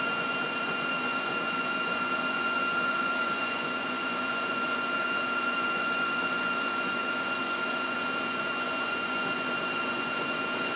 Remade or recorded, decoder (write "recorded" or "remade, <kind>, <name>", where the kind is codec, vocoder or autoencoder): remade, vocoder, Vocos